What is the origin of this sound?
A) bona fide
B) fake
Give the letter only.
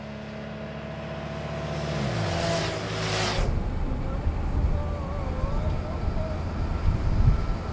A